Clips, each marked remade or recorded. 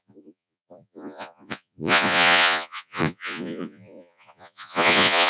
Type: remade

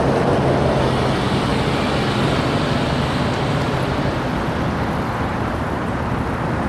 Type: recorded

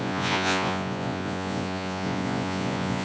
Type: remade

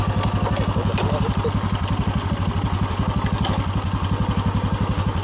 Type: recorded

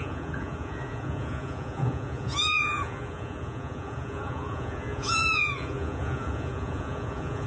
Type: remade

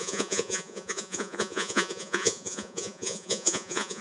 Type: remade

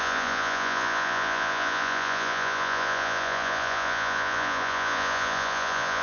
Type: remade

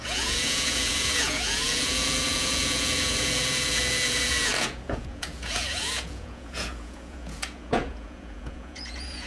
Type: remade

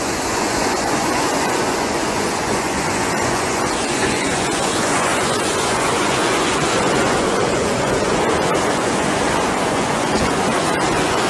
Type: remade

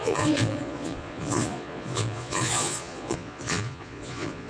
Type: remade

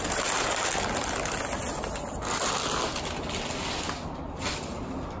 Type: recorded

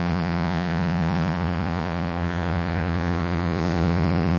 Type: remade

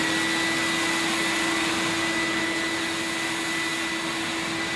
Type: recorded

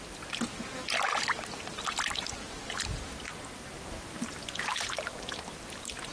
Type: recorded